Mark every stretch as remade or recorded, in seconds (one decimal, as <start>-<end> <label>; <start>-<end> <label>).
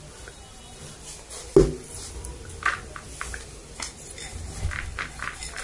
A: 0.0-5.6 recorded